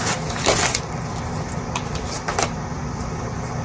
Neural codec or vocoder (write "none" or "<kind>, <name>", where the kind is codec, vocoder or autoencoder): vocoder, BigVGAN v2